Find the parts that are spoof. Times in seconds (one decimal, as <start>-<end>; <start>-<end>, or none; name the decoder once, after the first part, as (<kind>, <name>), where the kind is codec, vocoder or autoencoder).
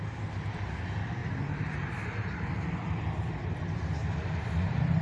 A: 0.0-1.2 (vocoder, BigVGAN v2); 1.9-5.0